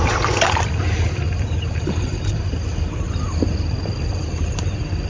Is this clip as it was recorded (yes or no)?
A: no